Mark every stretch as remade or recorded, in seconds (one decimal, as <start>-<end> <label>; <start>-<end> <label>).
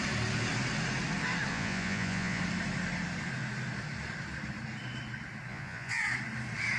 0.0-1.5 recorded; 1.5-2.4 remade; 2.4-5.5 recorded; 5.5-6.0 remade; 6.0-6.8 recorded